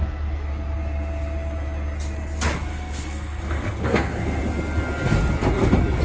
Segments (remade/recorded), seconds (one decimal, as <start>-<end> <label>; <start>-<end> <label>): 0.0-2.7 recorded; 2.7-4.4 remade; 4.4-6.0 recorded